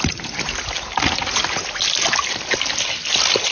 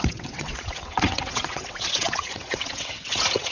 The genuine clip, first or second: first